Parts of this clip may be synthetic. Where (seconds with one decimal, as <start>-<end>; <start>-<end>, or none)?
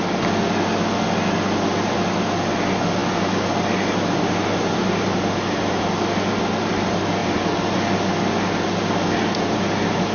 none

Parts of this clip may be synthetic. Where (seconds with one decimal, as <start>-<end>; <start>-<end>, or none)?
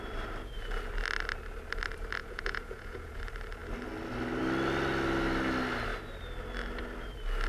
2.2-3.2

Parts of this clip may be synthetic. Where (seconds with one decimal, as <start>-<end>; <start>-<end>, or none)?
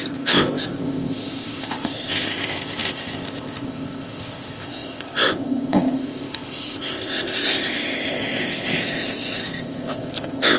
0.0-10.6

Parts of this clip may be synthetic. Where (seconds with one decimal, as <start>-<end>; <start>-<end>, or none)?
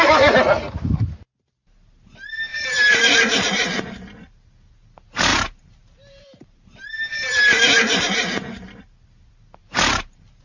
2.5-3.9; 5.3-8.8; 9.6-10.4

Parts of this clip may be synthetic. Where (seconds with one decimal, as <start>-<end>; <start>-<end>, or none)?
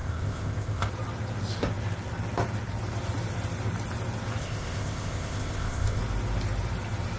0.0-0.9; 4.4-6.0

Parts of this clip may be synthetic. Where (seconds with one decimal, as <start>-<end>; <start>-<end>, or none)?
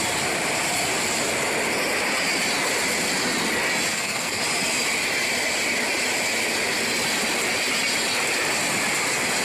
3.9-4.4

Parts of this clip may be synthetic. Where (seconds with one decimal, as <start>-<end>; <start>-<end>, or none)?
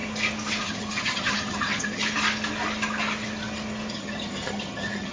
0.6-2.0; 3.9-5.1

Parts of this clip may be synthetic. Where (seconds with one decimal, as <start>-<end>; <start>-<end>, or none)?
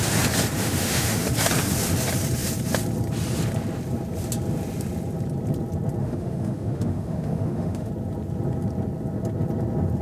0.6-1.3; 6.0-7.9